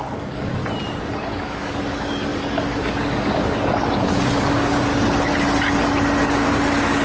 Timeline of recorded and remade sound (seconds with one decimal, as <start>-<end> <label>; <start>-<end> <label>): 0.0-0.6 remade; 0.6-1.2 recorded; 1.2-4.9 remade; 4.9-6.3 recorded; 6.3-7.0 remade